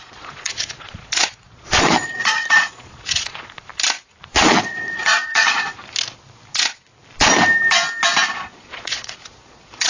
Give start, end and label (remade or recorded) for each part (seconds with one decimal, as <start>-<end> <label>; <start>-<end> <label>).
0.0-3.7 remade; 3.7-4.3 recorded; 4.3-5.8 remade; 5.8-6.5 recorded; 6.5-6.9 remade; 6.9-8.3 recorded; 8.3-9.9 remade

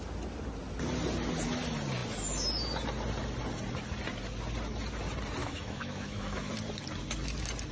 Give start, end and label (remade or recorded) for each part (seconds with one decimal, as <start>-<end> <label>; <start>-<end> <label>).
0.0-5.4 recorded; 5.4-6.5 remade; 6.5-7.7 recorded

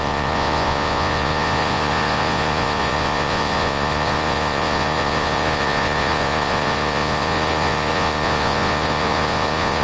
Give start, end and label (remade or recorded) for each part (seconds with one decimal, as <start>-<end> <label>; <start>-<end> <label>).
0.0-9.8 remade

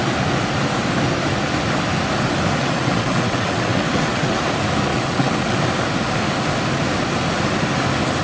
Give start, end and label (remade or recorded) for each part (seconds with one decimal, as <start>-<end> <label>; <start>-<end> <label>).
0.0-2.6 recorded; 2.6-4.4 remade; 4.4-4.9 recorded; 4.9-5.6 remade; 5.6-8.2 recorded

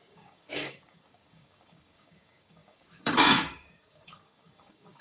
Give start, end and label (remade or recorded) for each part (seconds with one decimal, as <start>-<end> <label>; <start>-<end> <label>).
0.0-5.0 remade